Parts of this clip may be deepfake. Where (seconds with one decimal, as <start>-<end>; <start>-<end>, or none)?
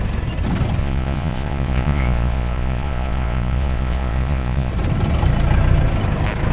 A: 0.8-4.7